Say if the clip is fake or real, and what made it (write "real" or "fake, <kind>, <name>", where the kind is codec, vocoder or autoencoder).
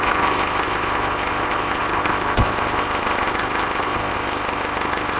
fake, codec, ZipCodec